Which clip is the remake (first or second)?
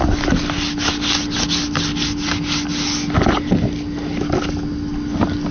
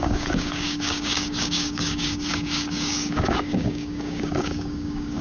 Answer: second